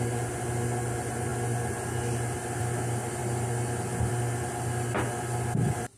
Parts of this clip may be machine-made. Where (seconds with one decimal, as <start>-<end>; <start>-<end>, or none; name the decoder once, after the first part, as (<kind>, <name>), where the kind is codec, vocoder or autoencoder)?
none